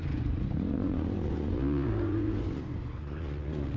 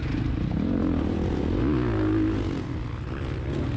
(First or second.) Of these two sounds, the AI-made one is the first